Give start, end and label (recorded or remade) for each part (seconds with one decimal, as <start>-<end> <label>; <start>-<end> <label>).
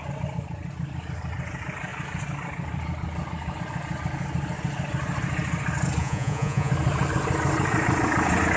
0.0-6.0 recorded; 6.0-6.7 remade; 6.7-8.6 recorded